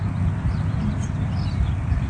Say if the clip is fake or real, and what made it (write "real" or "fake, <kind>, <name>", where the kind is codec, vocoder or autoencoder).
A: real